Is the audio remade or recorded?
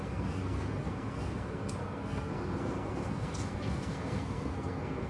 remade